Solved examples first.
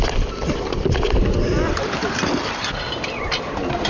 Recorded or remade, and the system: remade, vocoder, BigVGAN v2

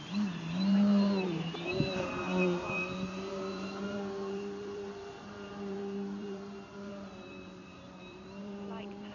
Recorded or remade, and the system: remade, vocoder, BigVGAN v2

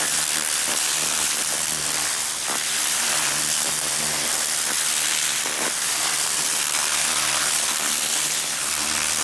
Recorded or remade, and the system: remade, vocoder, BigVGAN v2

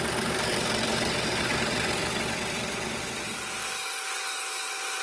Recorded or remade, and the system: remade, vocoder, BigVGAN v2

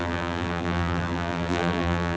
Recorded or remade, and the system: remade, vocoder, BigVGAN v2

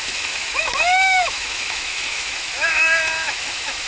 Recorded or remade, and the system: remade, autoencoder, DAC-VAE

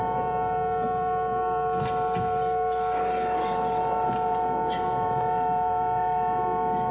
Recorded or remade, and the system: recorded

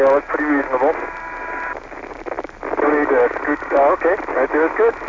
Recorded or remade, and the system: recorded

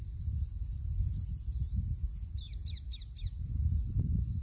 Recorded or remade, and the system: recorded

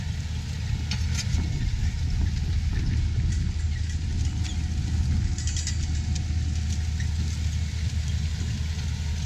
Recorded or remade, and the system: recorded